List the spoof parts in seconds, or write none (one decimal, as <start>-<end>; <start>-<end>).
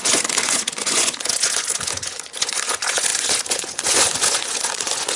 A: 0.0-5.2